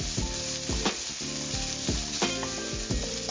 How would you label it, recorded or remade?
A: recorded